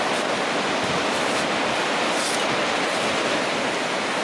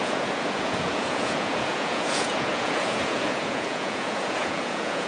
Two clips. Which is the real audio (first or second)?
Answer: first